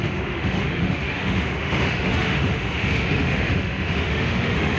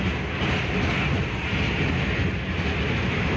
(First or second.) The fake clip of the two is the first